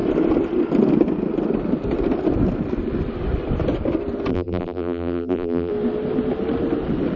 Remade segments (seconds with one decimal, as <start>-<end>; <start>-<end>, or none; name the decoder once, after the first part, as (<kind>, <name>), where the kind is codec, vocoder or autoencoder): 4.3-5.7 (vocoder, BigVGAN v2)